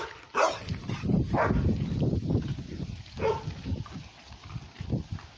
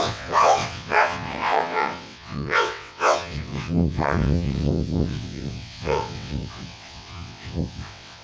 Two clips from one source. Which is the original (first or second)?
first